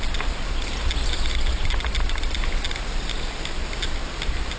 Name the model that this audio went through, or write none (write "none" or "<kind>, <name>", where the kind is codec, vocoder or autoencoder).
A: none